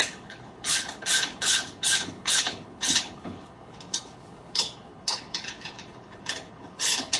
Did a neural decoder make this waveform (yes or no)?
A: yes